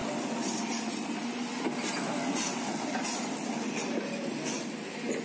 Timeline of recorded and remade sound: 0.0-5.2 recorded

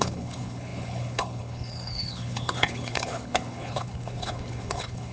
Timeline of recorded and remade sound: 0.0-5.1 remade

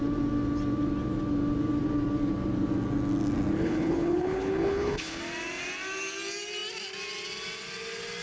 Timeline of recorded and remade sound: 0.0-3.6 recorded; 3.6-5.2 remade; 5.2-8.2 recorded

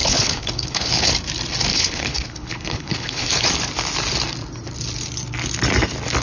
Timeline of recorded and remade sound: 0.0-1.1 remade; 1.1-1.7 recorded; 1.7-3.3 remade; 3.3-6.2 recorded

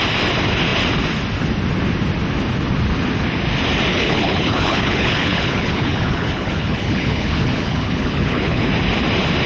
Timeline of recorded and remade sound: 0.0-3.9 recorded; 3.9-8.7 remade; 8.7-9.5 recorded

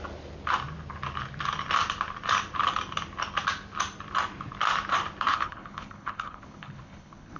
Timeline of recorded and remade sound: 0.0-5.3 recorded; 5.3-7.4 remade

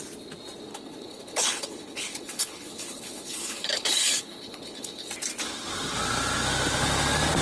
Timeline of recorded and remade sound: 0.0-0.7 recorded; 0.7-5.1 remade; 5.1-7.4 recorded

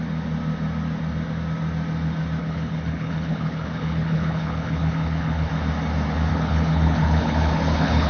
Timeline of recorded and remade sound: 0.0-2.4 recorded; 2.4-5.5 remade; 5.5-6.3 recorded; 6.3-8.1 remade